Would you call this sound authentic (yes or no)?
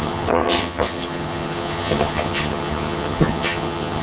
no